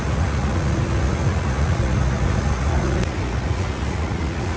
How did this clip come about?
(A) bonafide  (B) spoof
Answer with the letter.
B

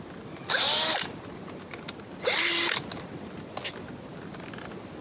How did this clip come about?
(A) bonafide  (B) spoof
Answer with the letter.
A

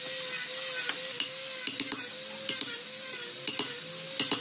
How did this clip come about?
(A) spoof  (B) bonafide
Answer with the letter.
B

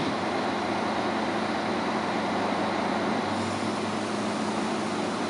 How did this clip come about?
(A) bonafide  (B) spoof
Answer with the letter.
A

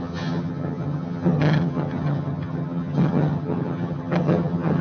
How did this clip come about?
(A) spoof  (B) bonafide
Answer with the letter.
A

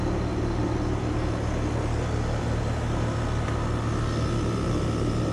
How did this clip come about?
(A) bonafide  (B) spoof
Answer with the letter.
A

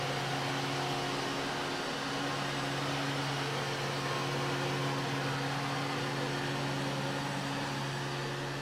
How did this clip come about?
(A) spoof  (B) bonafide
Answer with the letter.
B